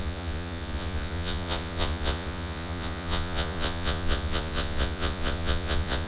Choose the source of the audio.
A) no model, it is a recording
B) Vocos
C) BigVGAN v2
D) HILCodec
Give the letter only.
B